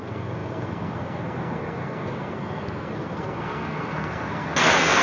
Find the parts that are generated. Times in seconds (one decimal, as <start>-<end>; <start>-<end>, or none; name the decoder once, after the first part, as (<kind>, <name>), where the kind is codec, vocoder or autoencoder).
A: 0.0-5.0 (codec, SNAC)